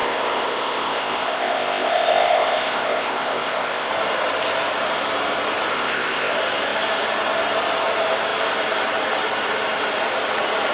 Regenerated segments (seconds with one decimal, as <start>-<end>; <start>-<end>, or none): 0.0-3.9; 5.7-6.3